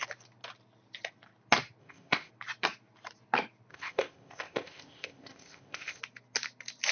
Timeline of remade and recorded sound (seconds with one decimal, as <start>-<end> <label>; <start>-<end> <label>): 0.0-1.8 recorded; 1.8-2.3 remade; 2.3-3.7 recorded; 3.7-6.0 remade; 6.0-6.9 recorded